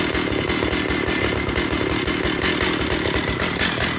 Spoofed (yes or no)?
no